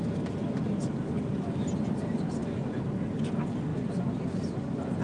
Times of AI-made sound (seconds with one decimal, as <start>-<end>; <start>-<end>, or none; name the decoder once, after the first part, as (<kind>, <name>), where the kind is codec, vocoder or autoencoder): none